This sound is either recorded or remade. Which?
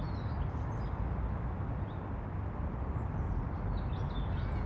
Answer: recorded